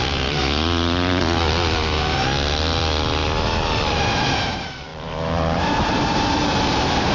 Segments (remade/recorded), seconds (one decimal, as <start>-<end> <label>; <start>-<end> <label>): 0.0-0.4 remade; 0.4-4.3 recorded; 4.3-7.1 remade